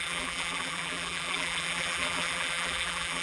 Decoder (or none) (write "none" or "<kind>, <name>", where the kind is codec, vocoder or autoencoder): vocoder, BigVGAN v2